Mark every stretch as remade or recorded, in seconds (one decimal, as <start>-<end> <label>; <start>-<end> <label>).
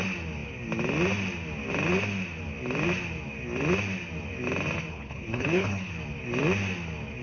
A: 0.0-4.9 recorded; 4.9-5.9 remade; 5.9-7.2 recorded